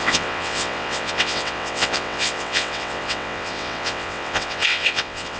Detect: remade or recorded remade